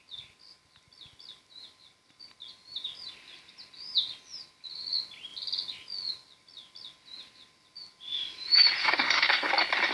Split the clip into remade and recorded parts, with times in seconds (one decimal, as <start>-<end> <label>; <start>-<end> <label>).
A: 0.0-8.8 recorded; 8.8-9.5 remade; 9.5-9.9 recorded